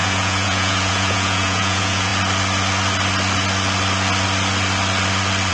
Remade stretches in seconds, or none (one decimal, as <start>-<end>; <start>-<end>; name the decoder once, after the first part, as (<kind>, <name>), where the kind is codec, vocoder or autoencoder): 0.0-2.1 (vocoder, Vocos)